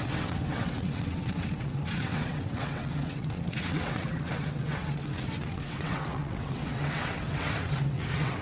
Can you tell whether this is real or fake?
fake